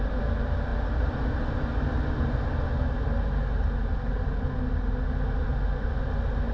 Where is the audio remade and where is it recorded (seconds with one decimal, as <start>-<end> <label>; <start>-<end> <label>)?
0.0-6.5 recorded